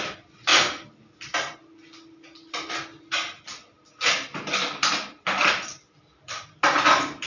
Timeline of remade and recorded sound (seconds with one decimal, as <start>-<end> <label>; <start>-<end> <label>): 0.0-7.3 recorded